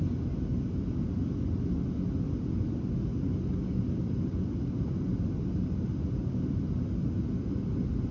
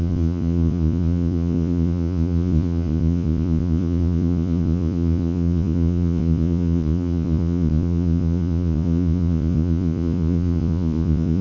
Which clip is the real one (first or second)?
first